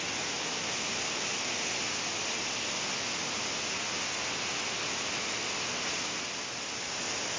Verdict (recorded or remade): recorded